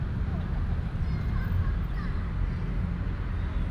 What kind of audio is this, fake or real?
real